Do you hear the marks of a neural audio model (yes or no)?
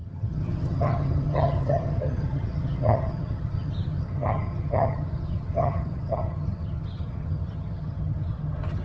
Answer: yes